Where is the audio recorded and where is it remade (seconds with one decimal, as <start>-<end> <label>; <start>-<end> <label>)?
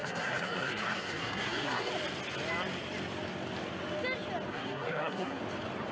0.0-1.9 remade; 1.9-4.5 recorded; 4.5-5.4 remade; 5.4-5.9 recorded